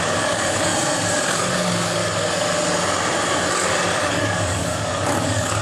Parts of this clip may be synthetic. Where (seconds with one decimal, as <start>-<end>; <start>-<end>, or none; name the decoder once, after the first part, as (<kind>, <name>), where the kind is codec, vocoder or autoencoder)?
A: 0.0-0.7 (codec, DAC); 1.5-2.0; 4.1-5.6